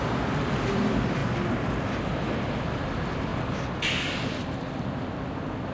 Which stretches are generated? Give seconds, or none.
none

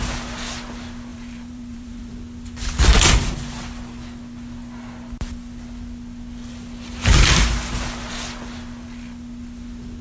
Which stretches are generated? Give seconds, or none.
1.1-2.1 (vocoder, BigVGAN v2)

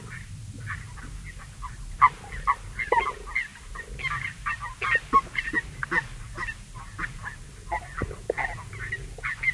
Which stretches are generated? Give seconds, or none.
none

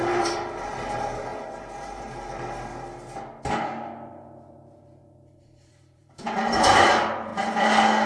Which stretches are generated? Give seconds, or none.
0.0-2.7 (vocoder, BigVGAN v2); 4.1-7.3

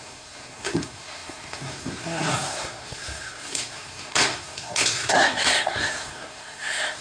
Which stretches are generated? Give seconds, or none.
0.0-7.0 (codec, SNAC)

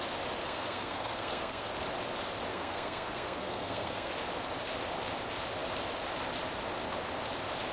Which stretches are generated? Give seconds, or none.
0.4-1.7 (codec, SNAC); 2.5-4.1

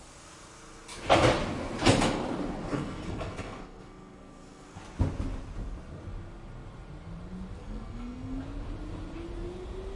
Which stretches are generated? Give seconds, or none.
2.7-4.8 (codec, SNAC); 7.6-8.4